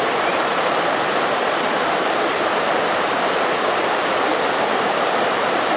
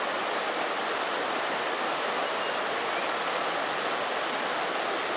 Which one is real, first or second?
second